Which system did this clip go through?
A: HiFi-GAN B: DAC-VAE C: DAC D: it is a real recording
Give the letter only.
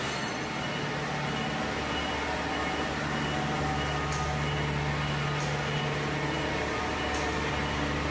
D